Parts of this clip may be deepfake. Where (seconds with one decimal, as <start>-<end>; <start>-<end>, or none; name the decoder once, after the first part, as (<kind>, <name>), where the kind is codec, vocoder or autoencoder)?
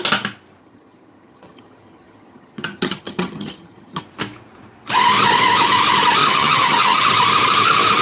0.6-4.0 (vocoder, HiFi-GAN); 6.2-7.1